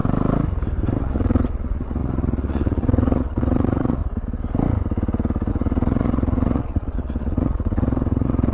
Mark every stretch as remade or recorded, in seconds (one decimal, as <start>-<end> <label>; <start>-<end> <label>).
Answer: 0.0-1.0 recorded; 1.0-4.0 remade; 4.0-5.5 recorded; 5.5-8.5 remade